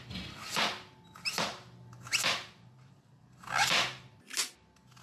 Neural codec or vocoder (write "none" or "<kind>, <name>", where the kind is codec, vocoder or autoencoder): none